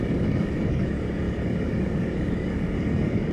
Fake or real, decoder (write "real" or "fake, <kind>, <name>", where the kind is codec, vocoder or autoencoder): fake, codec, DAC